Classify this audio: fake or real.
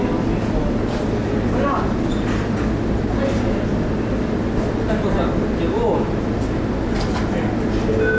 real